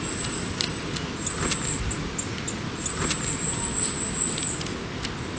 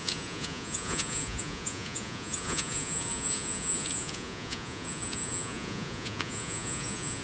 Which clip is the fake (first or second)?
second